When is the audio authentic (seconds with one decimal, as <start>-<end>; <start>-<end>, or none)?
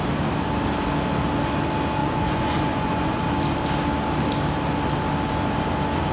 0.0-2.0; 3.2-6.1